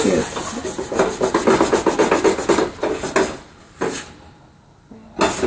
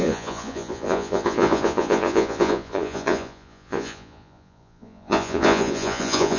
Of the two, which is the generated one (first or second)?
second